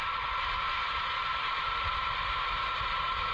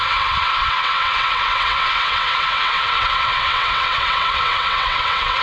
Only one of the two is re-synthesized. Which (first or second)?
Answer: second